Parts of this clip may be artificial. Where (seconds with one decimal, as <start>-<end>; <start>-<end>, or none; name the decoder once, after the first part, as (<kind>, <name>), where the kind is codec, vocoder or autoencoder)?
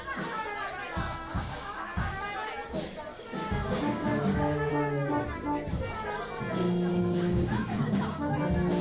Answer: 1.3-2.1 (codec, DAC); 3.1-4.7; 6.9-8.4